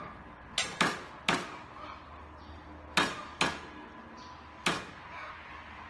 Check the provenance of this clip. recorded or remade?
recorded